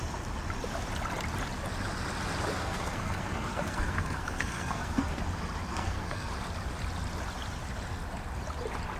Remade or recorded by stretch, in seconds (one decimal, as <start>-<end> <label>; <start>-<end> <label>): 0.0-2.6 recorded; 2.6-5.2 remade; 5.2-5.7 recorded; 5.7-6.3 remade; 6.3-9.0 recorded